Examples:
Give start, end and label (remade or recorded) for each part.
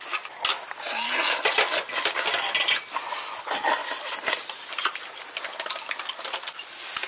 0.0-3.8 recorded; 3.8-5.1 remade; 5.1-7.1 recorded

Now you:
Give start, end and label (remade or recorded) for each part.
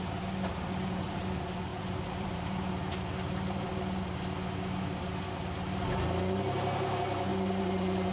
0.0-0.5 recorded; 0.5-1.2 remade; 1.2-1.7 recorded; 1.7-2.7 remade; 2.7-7.3 recorded; 7.3-8.1 remade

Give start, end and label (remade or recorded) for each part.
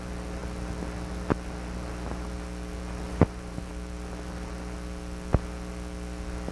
0.0-3.1 recorded; 3.1-3.7 remade; 3.7-6.5 recorded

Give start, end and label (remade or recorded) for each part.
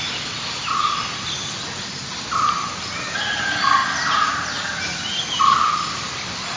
0.0-3.8 recorded; 3.8-4.8 remade; 4.8-6.6 recorded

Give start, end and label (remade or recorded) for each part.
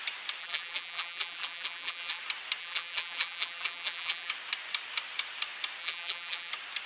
0.0-0.4 recorded; 0.4-2.2 remade; 2.2-2.6 recorded; 2.6-4.3 remade; 4.3-5.8 recorded; 5.8-6.5 remade; 6.5-6.9 recorded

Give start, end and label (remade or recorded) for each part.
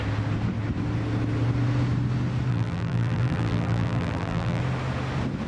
0.0-2.5 recorded; 2.5-4.6 remade; 4.6-5.5 recorded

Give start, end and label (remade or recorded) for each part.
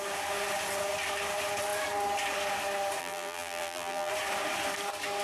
0.0-3.0 recorded; 3.0-4.1 remade; 4.1-5.2 recorded